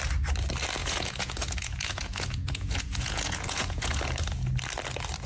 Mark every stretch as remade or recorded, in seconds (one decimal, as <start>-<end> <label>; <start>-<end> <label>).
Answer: 0.0-0.8 recorded; 0.8-4.0 remade; 4.0-5.3 recorded